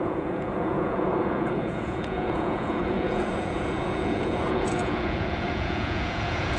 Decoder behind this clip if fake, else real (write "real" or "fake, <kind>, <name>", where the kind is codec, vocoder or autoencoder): fake, vocoder, Vocos